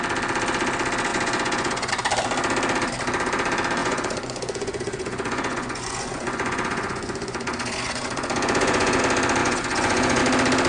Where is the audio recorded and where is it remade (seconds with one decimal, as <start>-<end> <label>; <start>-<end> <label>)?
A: 0.0-1.1 recorded; 1.1-1.9 remade; 1.9-3.8 recorded; 3.8-9.0 remade; 9.0-9.4 recorded; 9.4-10.2 remade; 10.2-10.7 recorded